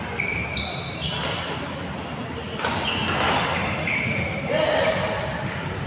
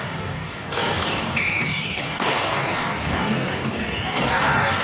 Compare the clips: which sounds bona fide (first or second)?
first